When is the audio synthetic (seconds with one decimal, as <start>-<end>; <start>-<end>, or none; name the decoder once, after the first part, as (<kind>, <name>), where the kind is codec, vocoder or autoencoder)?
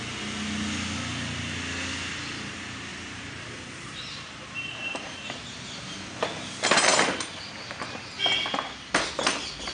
2.9-5.6 (vocoder, BigVGAN v2)